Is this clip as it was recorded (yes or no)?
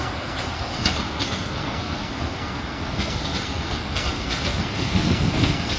no